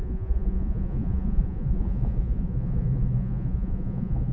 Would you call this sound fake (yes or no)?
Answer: yes